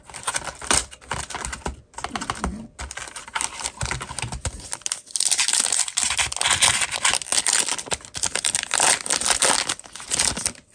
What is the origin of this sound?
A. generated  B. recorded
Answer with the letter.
B